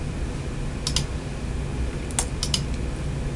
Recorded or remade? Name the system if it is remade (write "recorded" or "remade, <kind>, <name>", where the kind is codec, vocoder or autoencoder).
recorded